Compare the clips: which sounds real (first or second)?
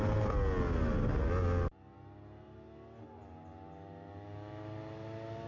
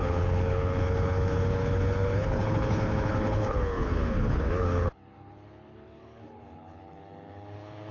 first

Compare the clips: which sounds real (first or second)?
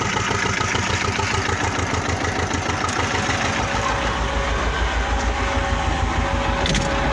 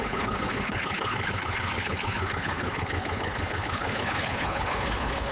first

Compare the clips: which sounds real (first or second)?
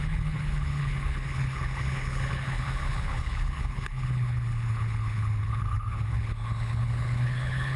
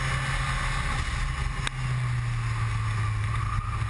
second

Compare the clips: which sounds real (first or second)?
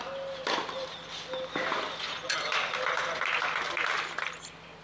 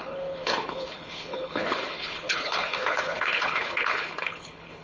first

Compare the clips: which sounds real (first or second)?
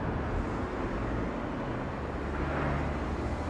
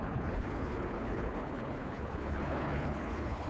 first